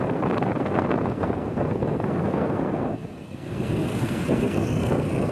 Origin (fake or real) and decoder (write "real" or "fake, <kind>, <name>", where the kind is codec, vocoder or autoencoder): fake, codec, SNAC